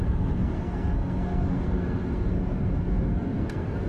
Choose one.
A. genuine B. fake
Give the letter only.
B